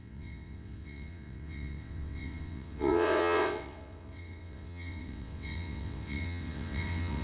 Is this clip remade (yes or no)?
yes